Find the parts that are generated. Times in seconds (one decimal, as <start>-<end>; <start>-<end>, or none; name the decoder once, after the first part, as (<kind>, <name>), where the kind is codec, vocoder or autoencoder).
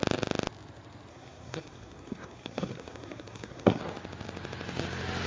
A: 1.1-3.8 (codec, SNAC)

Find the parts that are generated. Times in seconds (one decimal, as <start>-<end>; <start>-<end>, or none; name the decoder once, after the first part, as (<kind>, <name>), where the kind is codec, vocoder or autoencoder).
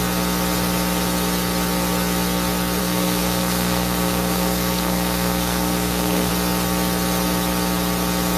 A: 2.8-6.3 (codec, SNAC)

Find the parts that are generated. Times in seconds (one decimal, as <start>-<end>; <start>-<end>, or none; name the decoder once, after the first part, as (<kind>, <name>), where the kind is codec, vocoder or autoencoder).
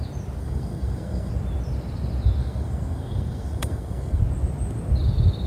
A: 0.4-1.3 (codec, SNAC); 2.4-4.2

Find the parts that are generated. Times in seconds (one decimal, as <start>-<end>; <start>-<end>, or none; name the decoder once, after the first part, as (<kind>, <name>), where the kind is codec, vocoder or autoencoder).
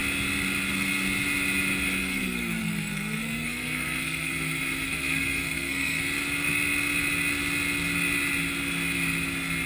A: 2.0-6.0 (codec, SNAC)